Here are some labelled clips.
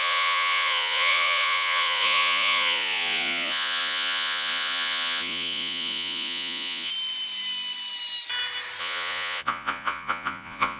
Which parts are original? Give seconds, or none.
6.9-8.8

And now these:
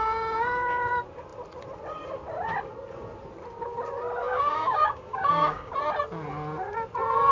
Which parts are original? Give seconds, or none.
0.0-4.2; 5.7-7.3

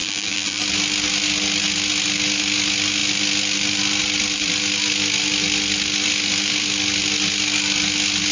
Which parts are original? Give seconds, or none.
0.6-8.3

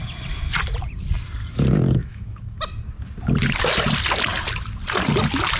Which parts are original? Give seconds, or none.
0.0-2.0; 2.6-5.6

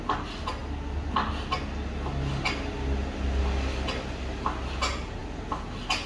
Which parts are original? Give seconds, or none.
0.0-6.1

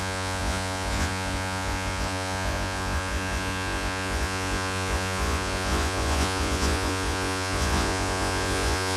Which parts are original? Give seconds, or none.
none

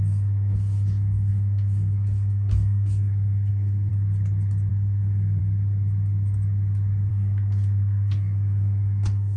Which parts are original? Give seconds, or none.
3.9-4.7; 5.4-7.1

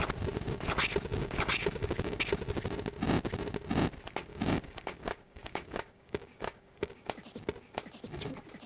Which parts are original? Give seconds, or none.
0.0-1.2; 2.2-4.3; 7.0-8.7